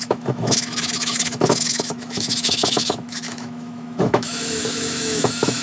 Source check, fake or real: fake